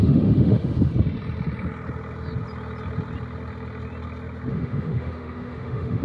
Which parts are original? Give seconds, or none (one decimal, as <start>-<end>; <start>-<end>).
0.9-4.5

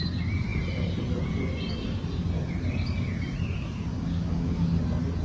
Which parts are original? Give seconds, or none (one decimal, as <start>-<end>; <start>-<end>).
0.0-3.9; 4.8-5.2

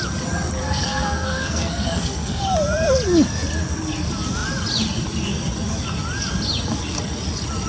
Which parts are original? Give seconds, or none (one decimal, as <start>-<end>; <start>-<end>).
0.0-0.6; 2.4-7.7

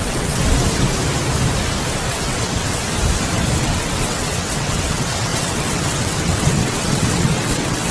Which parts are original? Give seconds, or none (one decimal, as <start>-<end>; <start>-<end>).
0.4-2.1; 2.8-3.6

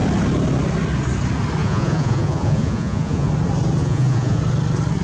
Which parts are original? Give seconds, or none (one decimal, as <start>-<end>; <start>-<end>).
0.0-1.6; 3.3-3.8; 4.4-5.0

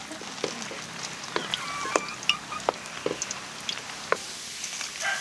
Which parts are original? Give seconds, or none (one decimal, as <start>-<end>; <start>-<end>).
0.0-5.2

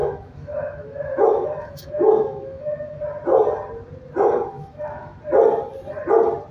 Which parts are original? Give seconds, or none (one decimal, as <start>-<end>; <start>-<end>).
3.0-4.5; 5.2-6.5

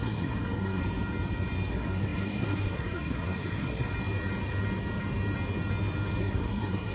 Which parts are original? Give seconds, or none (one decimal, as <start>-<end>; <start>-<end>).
0.8-1.7; 3.9-6.2